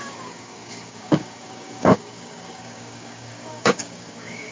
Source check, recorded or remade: remade